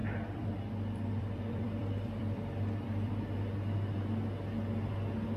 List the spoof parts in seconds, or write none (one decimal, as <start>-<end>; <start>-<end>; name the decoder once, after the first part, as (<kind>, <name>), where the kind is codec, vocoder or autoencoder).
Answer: 0.0-3.2 (vocoder, BigVGAN v2)